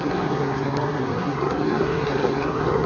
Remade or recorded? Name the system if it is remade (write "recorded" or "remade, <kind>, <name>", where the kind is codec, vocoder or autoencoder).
remade, codec, SNAC